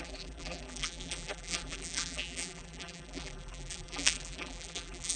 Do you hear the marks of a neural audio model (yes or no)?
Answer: yes